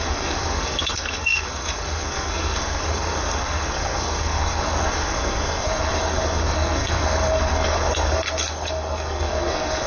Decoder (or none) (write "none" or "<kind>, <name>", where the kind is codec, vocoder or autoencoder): codec, SNAC